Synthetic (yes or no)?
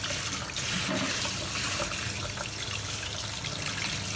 no